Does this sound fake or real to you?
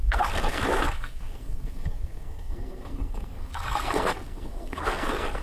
fake